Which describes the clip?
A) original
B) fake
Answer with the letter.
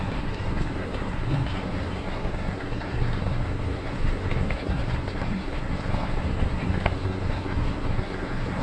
B